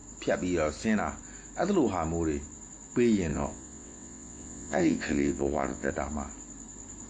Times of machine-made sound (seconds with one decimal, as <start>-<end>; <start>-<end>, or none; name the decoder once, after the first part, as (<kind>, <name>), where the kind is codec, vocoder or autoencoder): 3.3-5.9 (vocoder, WaveNeXt)